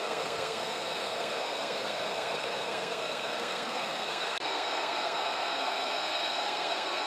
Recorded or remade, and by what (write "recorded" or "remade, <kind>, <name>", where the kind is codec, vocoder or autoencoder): remade, codec, SNAC